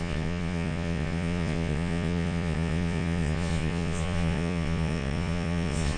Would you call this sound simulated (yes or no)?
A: yes